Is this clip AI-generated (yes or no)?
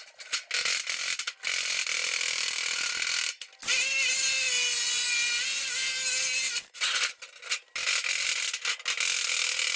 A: no